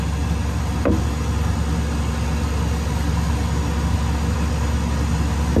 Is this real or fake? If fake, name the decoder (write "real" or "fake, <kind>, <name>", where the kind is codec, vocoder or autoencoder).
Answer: real